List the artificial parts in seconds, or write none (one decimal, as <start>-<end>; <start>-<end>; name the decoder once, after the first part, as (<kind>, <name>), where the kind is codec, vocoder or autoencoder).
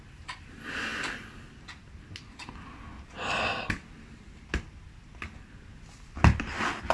none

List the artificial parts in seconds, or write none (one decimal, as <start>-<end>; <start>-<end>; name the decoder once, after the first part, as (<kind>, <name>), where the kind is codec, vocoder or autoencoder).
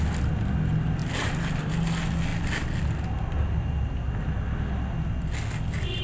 1.0-1.7 (vocoder, BigVGAN v2)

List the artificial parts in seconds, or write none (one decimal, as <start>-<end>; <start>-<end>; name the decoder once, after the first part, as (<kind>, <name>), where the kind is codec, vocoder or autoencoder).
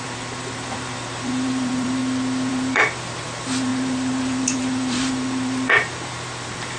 0.0-2.0 (vocoder, BigVGAN v2); 2.5-6.8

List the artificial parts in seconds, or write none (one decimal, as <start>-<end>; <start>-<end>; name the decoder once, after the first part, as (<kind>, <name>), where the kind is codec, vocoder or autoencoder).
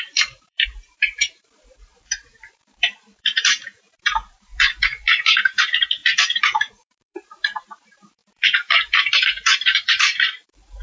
0.0-10.8 (vocoder, BigVGAN v2)